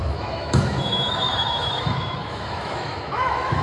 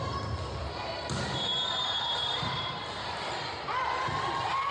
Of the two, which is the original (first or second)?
second